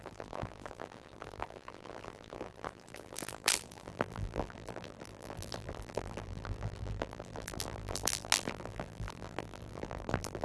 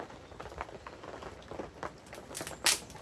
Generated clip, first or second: first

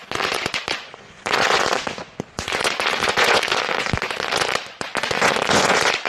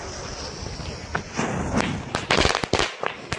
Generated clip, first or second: first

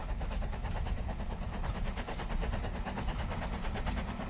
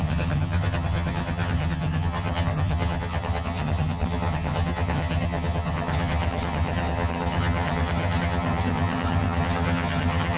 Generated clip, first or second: second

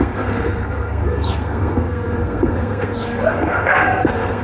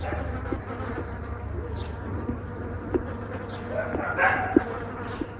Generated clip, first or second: first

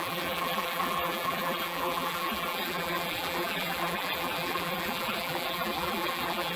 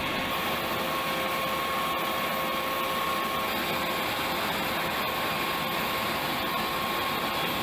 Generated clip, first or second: first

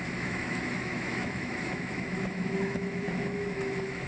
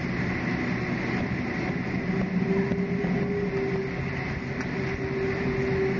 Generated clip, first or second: first